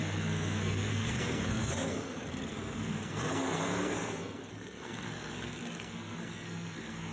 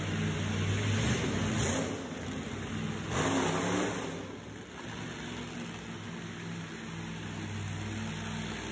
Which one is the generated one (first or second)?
first